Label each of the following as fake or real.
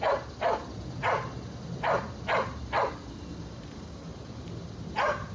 real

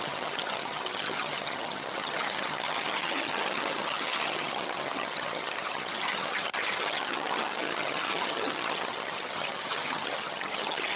fake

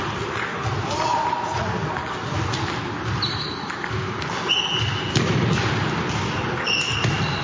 real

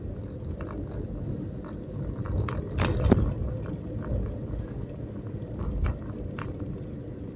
real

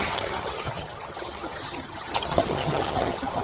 fake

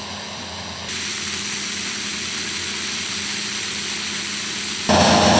real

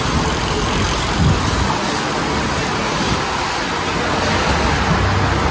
real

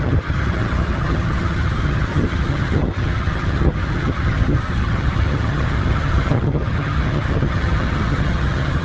fake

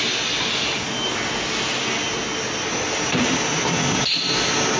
real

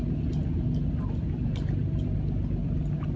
real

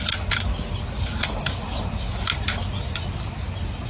real